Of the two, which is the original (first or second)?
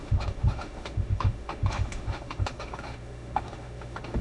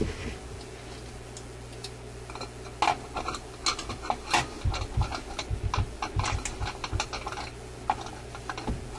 second